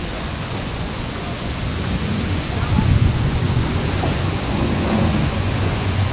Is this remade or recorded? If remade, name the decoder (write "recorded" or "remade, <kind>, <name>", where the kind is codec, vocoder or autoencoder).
remade, vocoder, Vocos